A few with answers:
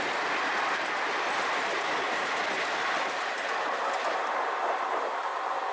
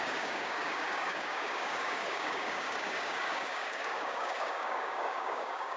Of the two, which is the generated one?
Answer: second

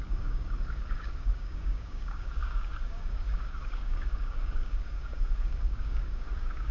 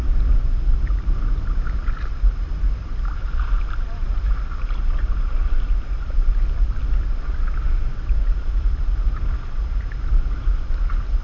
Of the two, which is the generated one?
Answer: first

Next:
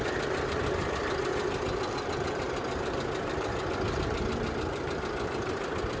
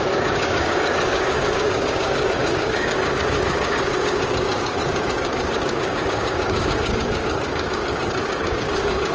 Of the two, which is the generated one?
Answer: second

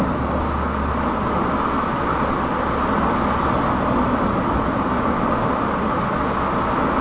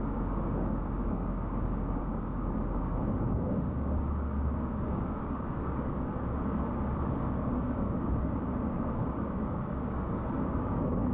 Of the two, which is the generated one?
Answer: second